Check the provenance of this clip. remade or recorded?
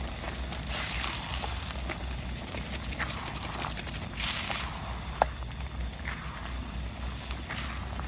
recorded